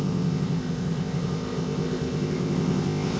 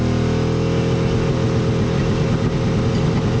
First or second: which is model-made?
first